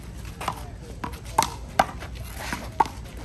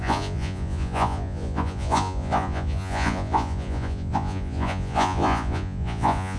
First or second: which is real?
first